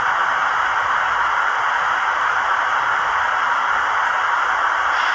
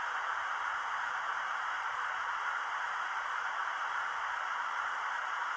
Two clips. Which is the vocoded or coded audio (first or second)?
second